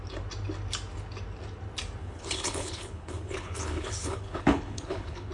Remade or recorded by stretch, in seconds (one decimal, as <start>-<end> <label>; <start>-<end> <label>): 0.0-2.0 recorded; 2.0-5.3 remade